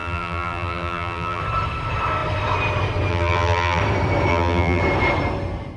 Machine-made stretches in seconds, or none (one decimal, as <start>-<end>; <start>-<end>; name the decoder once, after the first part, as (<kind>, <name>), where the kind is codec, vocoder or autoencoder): 0.0-1.4 (vocoder, BigVGAN v2); 3.1-3.8; 4.3-4.8